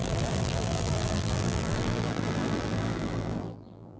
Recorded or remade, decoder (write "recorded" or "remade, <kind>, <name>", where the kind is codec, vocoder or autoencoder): remade, vocoder, BigVGAN v2